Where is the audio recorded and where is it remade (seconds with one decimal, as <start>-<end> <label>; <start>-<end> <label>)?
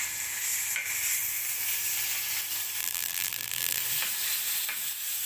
0.0-2.8 recorded; 2.8-3.8 remade; 3.8-5.3 recorded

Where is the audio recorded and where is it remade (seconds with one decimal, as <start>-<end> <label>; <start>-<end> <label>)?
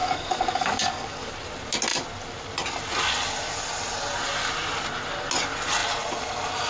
0.0-1.3 remade; 1.3-6.7 recorded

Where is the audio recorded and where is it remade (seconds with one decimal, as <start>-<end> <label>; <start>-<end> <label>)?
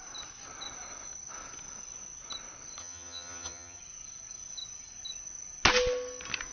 0.0-2.8 recorded; 2.8-3.8 remade; 3.8-6.5 recorded